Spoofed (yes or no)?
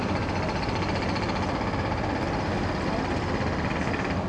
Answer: no